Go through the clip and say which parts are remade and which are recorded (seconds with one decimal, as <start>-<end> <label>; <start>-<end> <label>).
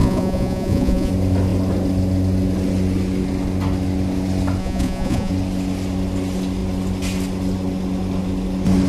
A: 0.0-1.1 remade; 1.1-4.6 recorded; 4.6-5.3 remade; 5.3-8.9 recorded